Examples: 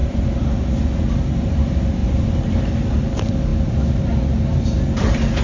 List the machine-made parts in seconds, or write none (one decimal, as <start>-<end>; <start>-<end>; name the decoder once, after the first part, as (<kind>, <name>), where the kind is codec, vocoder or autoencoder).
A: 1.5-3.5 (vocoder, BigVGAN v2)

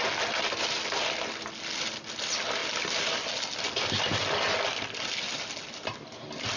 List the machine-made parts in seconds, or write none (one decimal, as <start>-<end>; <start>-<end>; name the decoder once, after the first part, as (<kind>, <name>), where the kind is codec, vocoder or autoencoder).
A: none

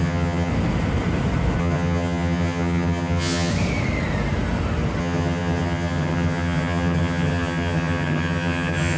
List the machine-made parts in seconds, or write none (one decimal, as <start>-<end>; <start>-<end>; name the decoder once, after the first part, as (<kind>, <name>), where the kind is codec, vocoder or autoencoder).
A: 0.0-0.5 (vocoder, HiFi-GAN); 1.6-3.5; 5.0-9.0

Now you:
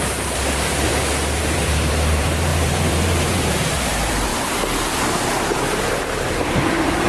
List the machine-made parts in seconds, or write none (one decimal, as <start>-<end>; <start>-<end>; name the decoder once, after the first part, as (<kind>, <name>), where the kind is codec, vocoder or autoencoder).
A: 0.0-0.9 (vocoder, BigVGAN v2); 1.4-4.3; 6.2-7.1